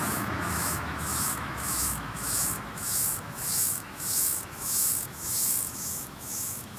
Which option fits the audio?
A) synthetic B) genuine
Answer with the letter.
A